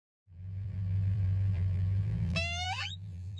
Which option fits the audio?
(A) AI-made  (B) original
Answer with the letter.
A